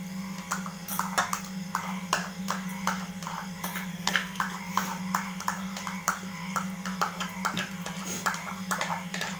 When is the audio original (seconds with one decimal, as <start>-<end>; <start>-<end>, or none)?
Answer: 0.0-3.9; 4.4-9.4

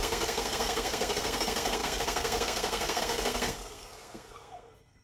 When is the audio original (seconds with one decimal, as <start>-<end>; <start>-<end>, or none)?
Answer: none

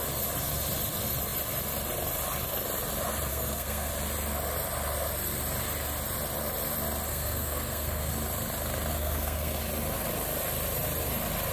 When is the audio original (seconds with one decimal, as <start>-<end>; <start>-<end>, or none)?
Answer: 0.0-3.3; 3.9-7.1; 8.1-8.9; 9.6-11.5

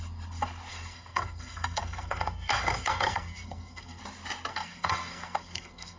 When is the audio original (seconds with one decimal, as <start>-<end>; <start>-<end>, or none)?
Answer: 0.0-0.7; 4.0-4.5

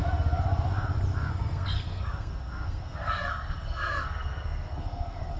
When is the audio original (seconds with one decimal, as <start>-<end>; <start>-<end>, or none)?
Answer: 0.0-1.3